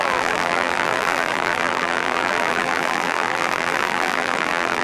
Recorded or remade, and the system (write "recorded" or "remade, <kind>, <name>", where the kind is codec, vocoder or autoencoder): remade, vocoder, BigVGAN v2